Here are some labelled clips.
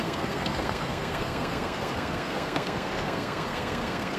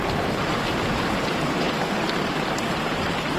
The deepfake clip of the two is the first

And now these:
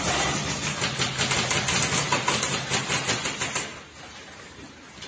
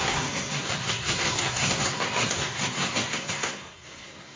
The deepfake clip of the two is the second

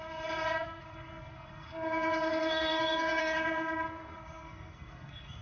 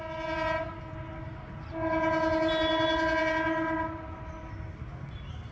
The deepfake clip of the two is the first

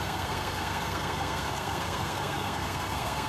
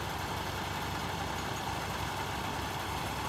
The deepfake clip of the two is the first